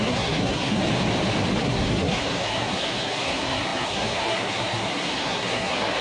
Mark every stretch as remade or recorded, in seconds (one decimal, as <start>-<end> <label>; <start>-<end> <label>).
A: 0.0-0.8 remade; 0.8-1.6 recorded; 1.6-6.0 remade